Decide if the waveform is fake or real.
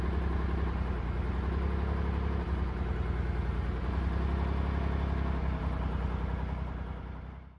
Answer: real